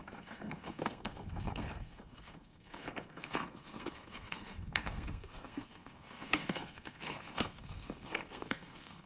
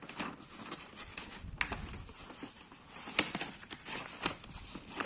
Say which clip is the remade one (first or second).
first